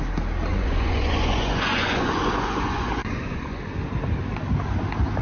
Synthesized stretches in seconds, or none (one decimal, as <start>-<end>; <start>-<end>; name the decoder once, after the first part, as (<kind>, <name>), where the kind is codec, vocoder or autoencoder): 0.5-3.6 (vocoder, Vocos)